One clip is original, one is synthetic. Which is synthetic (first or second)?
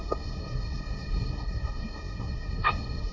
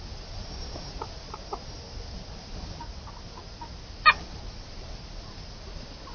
first